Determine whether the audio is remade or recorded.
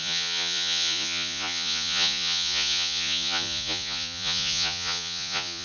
remade